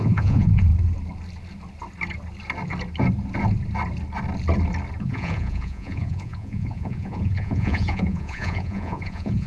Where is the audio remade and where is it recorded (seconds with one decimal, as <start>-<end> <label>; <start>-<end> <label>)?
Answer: 0.0-0.7 remade; 0.7-5.0 recorded; 5.0-9.5 remade